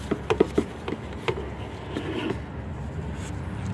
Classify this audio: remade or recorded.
recorded